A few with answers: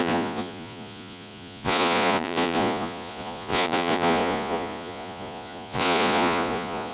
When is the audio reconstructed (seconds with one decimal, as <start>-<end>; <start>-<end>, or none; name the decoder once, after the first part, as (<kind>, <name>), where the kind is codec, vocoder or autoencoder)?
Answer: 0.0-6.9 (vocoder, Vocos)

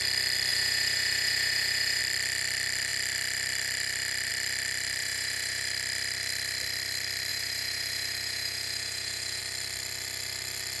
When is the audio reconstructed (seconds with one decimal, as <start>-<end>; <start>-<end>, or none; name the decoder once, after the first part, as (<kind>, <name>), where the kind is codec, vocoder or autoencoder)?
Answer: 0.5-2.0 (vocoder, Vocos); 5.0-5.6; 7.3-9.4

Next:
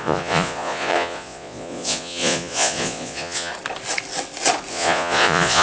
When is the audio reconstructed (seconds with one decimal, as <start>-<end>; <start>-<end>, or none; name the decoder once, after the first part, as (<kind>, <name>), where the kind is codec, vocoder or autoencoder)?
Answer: 0.0-3.5 (vocoder, Vocos); 4.7-5.6